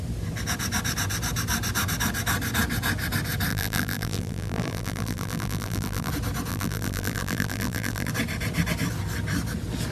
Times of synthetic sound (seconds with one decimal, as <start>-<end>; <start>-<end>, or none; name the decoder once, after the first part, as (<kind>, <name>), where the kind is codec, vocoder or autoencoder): 3.5-6.1 (vocoder, BigVGAN v2); 6.5-8.1